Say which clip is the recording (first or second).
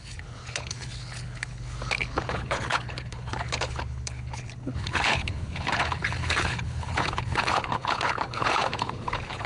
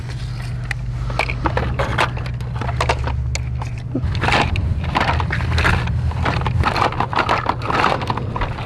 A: second